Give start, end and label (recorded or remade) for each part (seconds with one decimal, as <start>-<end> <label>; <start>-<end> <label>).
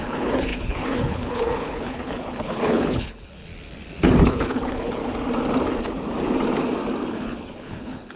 0.0-3.5 remade; 3.5-4.2 recorded; 4.2-5.0 remade; 5.0-7.1 recorded; 7.1-8.2 remade